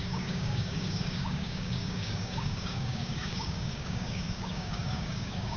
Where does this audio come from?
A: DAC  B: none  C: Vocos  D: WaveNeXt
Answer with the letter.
A